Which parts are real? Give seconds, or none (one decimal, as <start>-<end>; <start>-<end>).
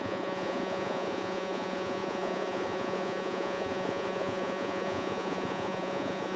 none